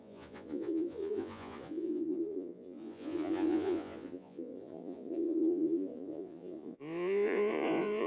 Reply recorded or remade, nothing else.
remade